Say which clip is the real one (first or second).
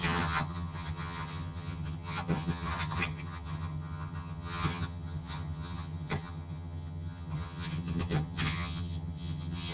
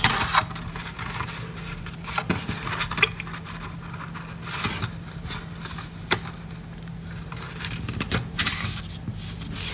second